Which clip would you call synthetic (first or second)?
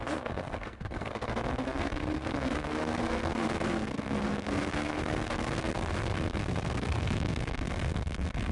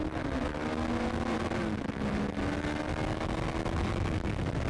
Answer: first